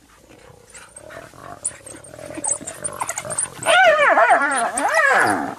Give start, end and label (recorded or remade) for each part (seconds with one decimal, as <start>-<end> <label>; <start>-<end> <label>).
0.0-5.6 remade